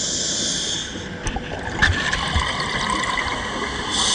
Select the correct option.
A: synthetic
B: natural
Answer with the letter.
B